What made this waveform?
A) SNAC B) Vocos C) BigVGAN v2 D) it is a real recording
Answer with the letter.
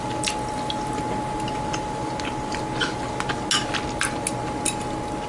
D